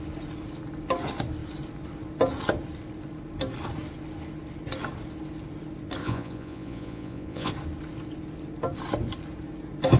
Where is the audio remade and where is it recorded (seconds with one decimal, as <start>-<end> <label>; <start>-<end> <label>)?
0.0-6.0 recorded; 6.0-7.5 remade; 7.5-10.0 recorded